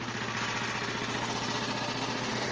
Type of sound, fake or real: real